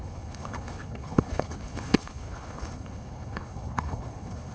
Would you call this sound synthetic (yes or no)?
yes